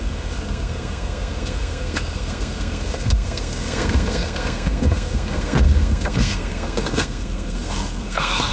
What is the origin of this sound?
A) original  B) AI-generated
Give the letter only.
B